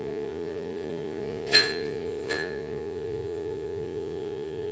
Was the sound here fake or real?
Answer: fake